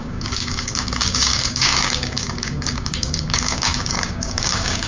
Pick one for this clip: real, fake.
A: fake